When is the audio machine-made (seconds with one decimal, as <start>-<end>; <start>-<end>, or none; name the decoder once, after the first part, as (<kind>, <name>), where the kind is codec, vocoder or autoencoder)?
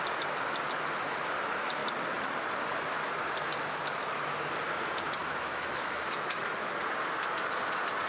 5.2-6.7 (autoencoder, DAC-VAE)